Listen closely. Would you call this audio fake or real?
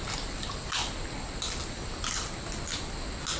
real